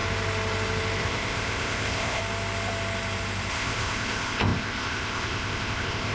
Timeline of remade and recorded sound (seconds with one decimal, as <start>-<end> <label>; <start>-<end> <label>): 0.0-1.0 recorded; 1.0-2.2 remade; 2.2-3.5 recorded; 3.5-6.1 remade